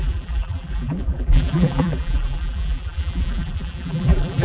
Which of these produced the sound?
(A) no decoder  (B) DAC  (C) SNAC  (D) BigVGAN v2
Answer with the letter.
D